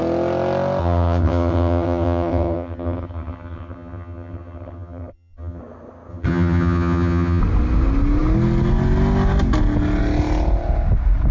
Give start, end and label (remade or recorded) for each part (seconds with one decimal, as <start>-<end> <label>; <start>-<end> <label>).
0.0-0.8 recorded; 0.8-5.6 remade; 5.6-6.1 recorded; 6.1-7.4 remade; 7.4-11.3 recorded